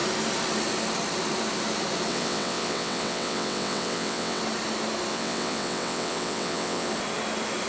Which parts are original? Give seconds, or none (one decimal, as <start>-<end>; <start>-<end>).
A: 0.0-2.1; 4.4-5.1; 6.9-7.7